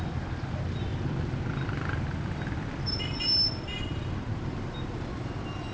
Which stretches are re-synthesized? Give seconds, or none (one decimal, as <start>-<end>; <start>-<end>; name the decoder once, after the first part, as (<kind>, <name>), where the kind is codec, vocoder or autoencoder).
0.9-4.3 (vocoder, BigVGAN v2)